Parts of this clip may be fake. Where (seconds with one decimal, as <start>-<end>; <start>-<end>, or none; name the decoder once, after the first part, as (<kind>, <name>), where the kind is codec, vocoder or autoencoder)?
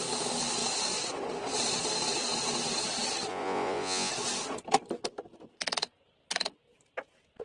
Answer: 3.3-4.1 (vocoder, Vocos)